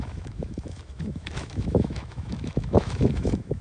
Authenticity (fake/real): fake